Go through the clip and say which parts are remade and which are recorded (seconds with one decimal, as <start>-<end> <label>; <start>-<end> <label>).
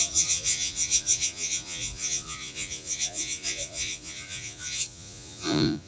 0.0-5.9 remade